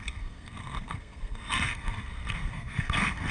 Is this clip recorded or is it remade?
remade